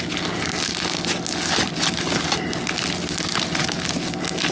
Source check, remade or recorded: recorded